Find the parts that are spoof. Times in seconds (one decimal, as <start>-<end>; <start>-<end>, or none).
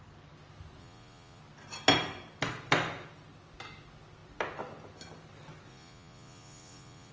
0.8-1.4; 5.7-7.1